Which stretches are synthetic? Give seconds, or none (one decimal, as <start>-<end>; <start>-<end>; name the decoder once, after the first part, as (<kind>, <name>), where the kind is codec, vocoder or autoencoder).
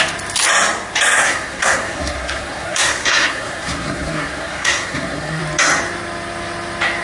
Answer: 1.2-5.4 (codec, SNAC)